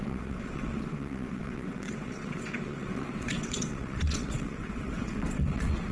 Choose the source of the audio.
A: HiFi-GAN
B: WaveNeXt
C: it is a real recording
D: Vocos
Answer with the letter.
B